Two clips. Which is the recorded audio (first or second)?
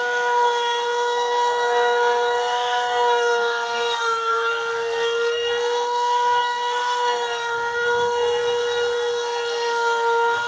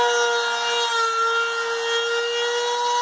second